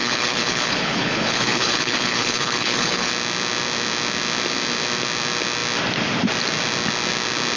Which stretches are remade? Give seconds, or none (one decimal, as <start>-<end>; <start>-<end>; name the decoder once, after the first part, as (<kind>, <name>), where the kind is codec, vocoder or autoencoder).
0.0-3.1 (codec, HILCodec)

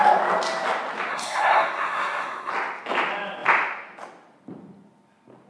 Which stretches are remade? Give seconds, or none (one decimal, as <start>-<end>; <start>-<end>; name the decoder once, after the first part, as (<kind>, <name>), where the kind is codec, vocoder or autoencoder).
1.1-2.5 (codec, SNAC)

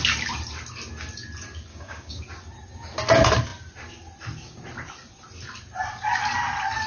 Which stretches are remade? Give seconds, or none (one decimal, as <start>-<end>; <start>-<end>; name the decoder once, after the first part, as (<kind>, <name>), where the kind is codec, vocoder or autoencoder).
1.7-2.2 (codec, DAC)

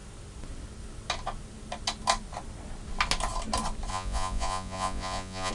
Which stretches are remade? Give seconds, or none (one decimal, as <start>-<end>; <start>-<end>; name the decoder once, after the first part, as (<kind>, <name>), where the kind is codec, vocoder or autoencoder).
3.9-5.5 (vocoder, Vocos)

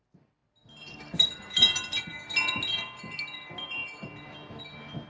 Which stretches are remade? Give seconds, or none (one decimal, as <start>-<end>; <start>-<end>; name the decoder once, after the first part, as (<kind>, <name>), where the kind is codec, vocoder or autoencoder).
none

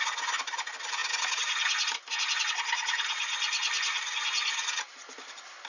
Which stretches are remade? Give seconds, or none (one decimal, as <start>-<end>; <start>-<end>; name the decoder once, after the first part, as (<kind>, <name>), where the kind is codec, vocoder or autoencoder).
none

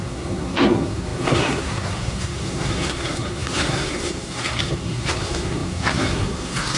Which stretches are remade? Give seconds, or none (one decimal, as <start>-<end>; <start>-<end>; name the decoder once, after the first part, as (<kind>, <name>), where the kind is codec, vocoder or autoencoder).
0.0-6.8 (codec, SNAC)

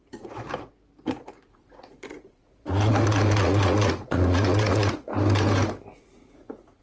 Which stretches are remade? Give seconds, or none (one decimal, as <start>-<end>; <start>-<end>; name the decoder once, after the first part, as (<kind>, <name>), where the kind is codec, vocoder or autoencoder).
0.0-0.5 (vocoder, Vocos); 1.1-5.1; 6.0-6.8